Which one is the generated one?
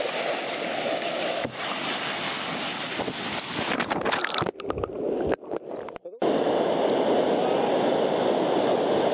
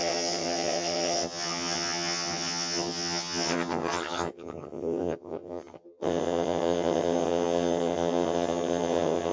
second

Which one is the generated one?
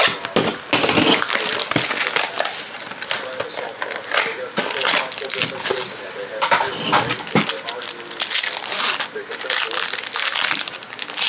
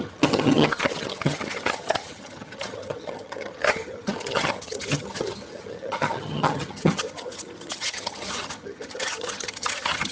second